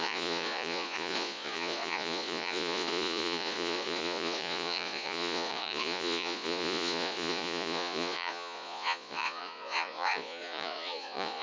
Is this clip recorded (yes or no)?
no